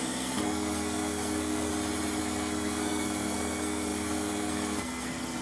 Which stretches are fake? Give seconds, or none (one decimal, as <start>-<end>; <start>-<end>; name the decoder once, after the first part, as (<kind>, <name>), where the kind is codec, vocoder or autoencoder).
0.0-1.7 (codec, SNAC); 2.2-5.4